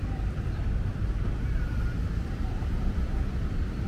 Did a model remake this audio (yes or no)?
yes